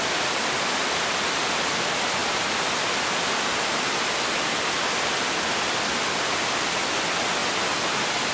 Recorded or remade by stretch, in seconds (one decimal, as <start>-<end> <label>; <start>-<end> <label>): 0.0-8.3 recorded